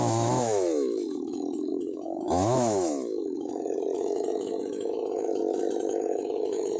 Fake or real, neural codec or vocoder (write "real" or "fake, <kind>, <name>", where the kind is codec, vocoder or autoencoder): fake, autoencoder, DAC-VAE